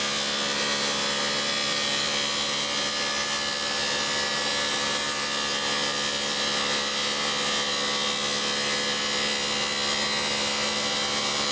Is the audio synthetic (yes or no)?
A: no